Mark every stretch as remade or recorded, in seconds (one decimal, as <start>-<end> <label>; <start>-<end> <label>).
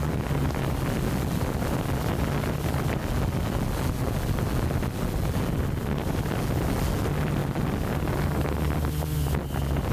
0.0-9.9 recorded